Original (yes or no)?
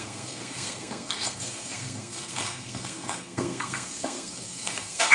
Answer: no